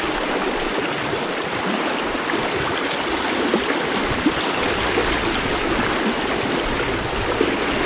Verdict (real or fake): real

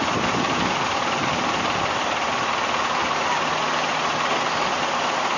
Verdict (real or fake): real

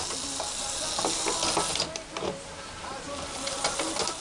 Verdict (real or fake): real